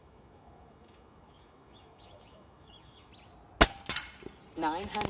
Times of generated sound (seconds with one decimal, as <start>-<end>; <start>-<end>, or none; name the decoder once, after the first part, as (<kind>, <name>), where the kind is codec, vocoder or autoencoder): 0.0-3.1 (autoencoder, DAC-VAE)